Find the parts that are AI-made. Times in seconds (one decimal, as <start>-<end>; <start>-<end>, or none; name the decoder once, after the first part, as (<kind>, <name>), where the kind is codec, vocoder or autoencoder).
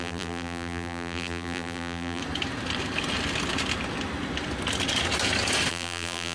0.0-2.2 (vocoder, BigVGAN v2); 5.7-6.3